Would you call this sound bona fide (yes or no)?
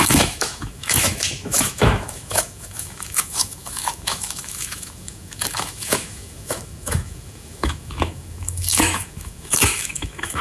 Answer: no